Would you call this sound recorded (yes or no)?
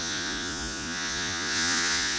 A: no